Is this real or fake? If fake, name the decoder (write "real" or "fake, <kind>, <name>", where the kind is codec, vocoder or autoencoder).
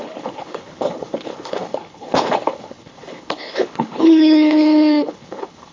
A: fake, codec, HILCodec